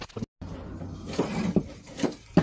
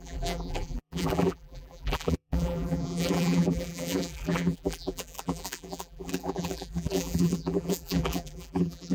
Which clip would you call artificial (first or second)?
second